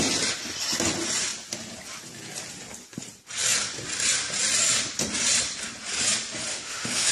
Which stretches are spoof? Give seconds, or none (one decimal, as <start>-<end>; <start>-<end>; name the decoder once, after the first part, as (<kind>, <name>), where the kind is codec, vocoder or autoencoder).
6.5-7.1 (autoencoder, DAC-VAE)